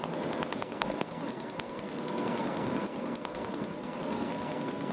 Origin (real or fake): fake